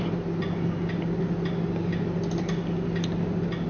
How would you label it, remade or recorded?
recorded